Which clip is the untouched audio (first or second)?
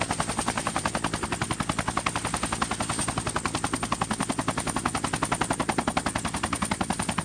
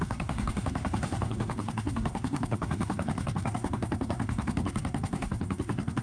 first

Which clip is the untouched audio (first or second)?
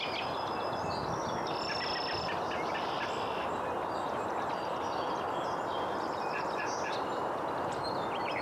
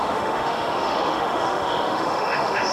first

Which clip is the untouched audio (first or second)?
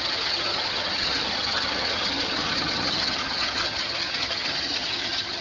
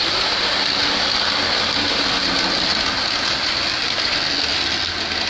second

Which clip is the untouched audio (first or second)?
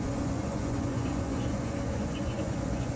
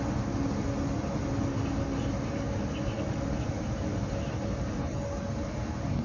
second